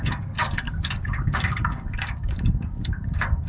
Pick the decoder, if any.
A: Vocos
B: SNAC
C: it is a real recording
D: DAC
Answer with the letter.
D